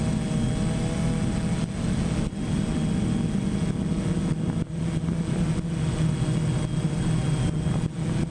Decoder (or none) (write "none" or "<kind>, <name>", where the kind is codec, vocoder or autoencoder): none